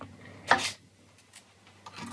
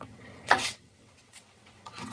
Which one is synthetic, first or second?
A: second